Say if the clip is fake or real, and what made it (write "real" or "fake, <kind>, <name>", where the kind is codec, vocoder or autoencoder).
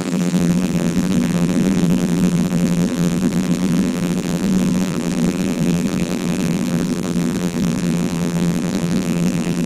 fake, vocoder, BigVGAN v2